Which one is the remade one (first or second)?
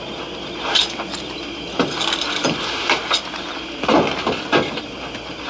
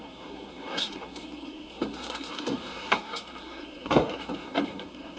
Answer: second